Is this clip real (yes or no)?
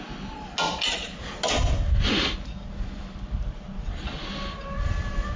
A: yes